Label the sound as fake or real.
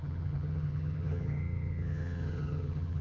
fake